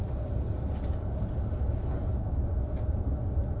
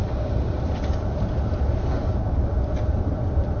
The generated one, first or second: second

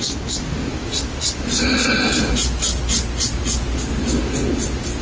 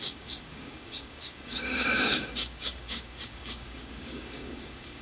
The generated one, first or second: second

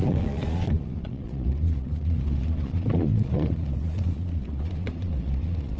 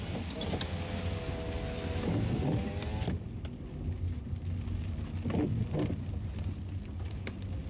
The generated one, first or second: first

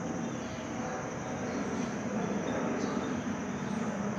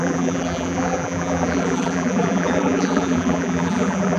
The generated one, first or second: second